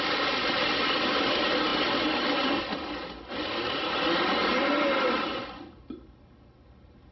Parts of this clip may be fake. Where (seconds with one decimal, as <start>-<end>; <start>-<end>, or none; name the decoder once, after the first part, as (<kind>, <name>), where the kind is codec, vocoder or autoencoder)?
none